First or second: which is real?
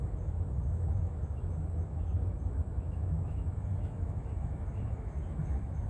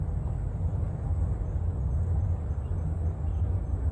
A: second